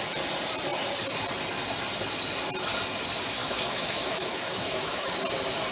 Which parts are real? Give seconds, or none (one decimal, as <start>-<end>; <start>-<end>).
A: 0.0-3.4; 5.1-5.7